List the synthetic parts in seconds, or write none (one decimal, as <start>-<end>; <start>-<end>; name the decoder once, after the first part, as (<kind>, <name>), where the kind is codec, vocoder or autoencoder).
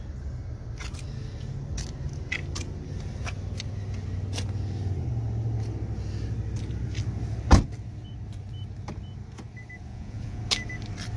9.9-10.4 (vocoder, Vocos)